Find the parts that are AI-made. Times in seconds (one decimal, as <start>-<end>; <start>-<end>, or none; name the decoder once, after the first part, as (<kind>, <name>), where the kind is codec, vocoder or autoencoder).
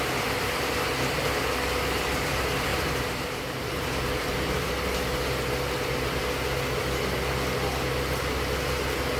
2.7-4.7 (vocoder, BigVGAN v2)